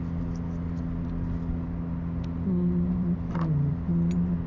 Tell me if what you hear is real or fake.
real